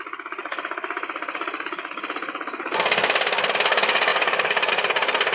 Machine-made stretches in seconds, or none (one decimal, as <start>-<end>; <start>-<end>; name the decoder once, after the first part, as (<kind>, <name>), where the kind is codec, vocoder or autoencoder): 4.1-4.7 (vocoder, BigVGAN v2)